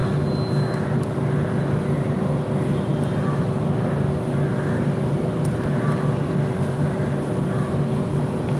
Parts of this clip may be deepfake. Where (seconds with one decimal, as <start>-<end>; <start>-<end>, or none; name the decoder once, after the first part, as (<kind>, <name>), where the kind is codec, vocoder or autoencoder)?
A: none